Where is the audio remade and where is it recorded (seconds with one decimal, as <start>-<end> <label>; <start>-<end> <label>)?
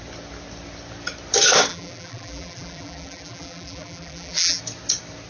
0.0-1.7 recorded; 1.7-4.6 remade; 4.6-5.3 recorded